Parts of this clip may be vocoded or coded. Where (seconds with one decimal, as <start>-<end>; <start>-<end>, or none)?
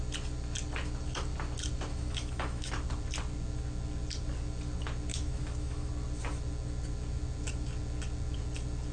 1.9-2.7; 5.1-5.9